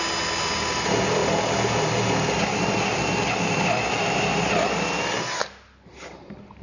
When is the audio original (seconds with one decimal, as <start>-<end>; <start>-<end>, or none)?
0.0-6.6

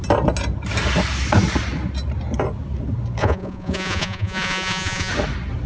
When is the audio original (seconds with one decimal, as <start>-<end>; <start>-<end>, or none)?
0.0-3.2; 5.1-5.7

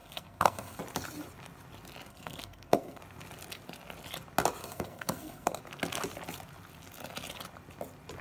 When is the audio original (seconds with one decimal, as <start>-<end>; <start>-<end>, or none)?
0.8-2.1; 3.0-4.6; 5.6-8.2

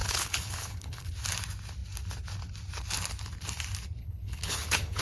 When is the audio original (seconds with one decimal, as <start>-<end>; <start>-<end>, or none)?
1.1-4.0